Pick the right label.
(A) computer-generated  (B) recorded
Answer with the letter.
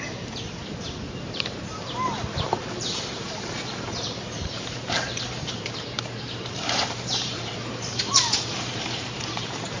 A